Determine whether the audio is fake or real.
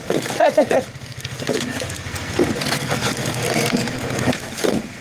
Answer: fake